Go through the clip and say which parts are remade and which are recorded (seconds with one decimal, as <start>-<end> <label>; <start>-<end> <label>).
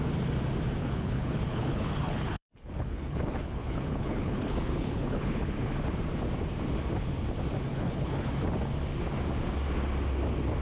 0.0-0.8 recorded; 0.8-5.7 remade; 5.7-7.7 recorded; 7.7-8.3 remade; 8.3-10.6 recorded